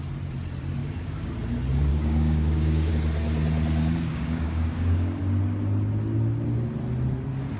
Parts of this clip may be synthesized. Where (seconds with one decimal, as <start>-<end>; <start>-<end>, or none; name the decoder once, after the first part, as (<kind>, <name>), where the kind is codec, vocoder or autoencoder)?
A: 0.8-1.3 (codec, DAC); 1.9-2.9; 4.1-5.2